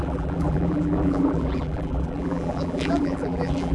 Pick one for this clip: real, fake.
fake